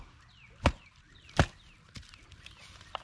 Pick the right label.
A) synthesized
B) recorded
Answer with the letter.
B